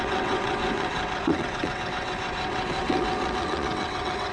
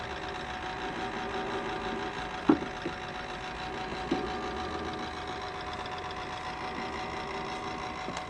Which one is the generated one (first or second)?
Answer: first